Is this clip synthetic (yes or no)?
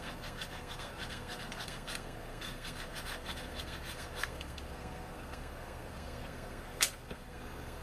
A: yes